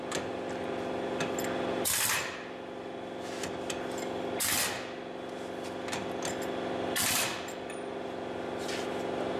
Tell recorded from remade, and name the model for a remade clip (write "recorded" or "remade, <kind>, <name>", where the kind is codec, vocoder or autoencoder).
recorded